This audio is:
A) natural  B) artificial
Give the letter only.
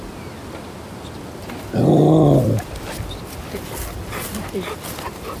A